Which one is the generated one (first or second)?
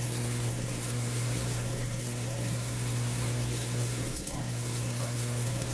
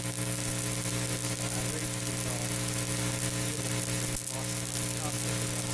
first